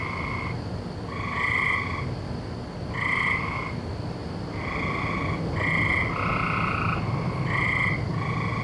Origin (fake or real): real